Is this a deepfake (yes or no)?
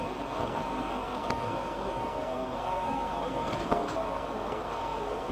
yes